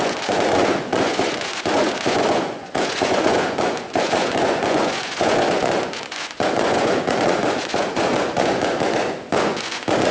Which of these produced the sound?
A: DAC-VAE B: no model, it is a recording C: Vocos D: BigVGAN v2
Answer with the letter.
C